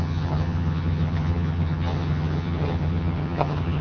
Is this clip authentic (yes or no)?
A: no